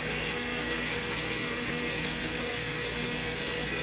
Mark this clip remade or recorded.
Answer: remade